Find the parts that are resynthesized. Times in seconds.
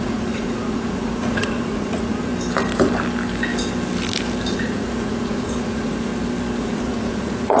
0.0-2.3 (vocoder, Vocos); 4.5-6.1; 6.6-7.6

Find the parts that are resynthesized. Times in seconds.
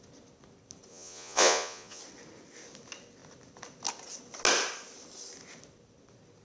0.9-2.0 (vocoder, Vocos)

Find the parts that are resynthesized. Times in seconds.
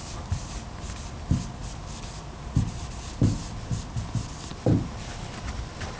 none